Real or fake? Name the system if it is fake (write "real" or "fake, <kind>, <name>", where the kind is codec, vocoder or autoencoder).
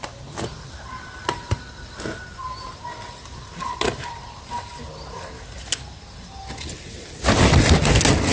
real